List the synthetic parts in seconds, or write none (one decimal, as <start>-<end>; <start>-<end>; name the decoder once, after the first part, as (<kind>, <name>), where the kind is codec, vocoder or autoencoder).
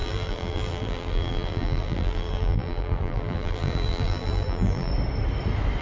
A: 0.0-4.9 (vocoder, BigVGAN v2)